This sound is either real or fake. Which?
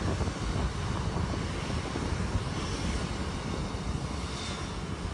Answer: real